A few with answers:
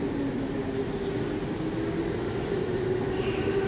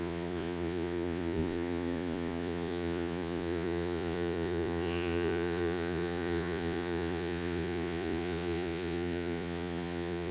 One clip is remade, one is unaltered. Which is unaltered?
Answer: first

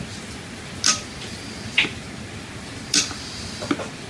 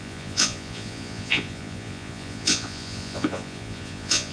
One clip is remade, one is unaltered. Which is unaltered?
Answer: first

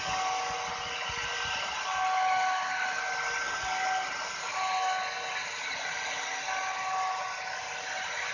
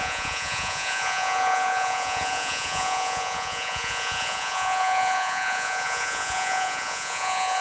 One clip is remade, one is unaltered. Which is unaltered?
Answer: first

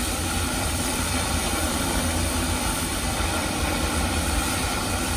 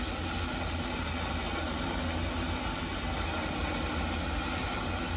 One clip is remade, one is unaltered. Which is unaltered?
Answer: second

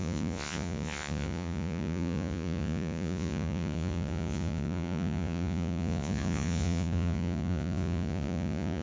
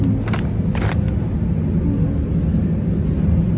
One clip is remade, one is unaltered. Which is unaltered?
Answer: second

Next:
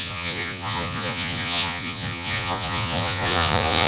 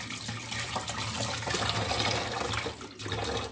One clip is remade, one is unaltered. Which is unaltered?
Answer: second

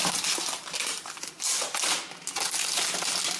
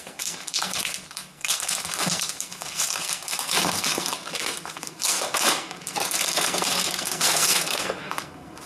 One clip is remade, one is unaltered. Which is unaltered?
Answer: first